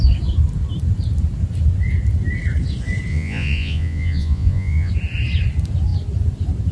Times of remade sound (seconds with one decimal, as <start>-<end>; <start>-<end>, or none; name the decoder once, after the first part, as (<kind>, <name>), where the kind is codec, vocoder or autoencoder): 3.1-4.9 (vocoder, Vocos)